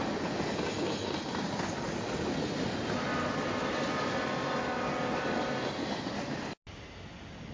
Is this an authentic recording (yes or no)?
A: yes